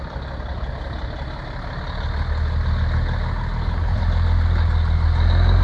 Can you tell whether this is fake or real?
real